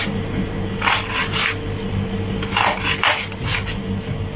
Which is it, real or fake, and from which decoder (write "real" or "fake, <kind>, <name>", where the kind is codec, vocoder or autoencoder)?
real